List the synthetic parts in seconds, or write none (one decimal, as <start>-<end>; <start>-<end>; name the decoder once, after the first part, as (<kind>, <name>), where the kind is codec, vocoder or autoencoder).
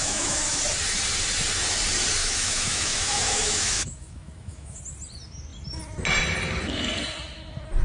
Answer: 0.0-0.6 (autoencoder, DAC-VAE); 2.2-4.8